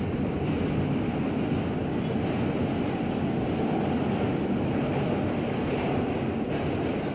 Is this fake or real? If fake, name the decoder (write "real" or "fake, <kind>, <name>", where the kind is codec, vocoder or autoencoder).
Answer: real